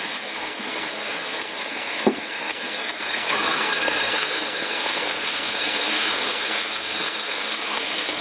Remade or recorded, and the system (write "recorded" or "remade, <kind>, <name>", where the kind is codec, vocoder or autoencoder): remade, codec, SNAC